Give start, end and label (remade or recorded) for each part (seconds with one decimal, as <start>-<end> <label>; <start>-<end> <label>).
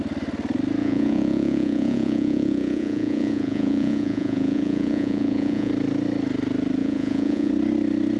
0.0-0.8 recorded; 0.8-5.7 remade; 5.7-6.8 recorded; 6.8-7.5 remade; 7.5-8.2 recorded